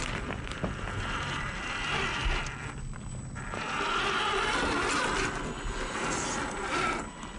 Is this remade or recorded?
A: recorded